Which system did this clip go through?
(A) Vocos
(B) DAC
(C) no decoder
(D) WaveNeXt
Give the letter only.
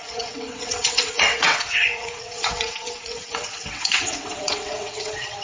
D